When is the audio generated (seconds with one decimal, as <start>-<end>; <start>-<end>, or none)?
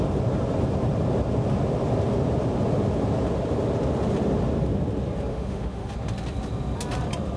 5.3-5.9